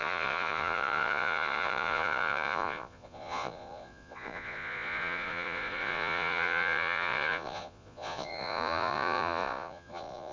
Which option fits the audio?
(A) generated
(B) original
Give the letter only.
A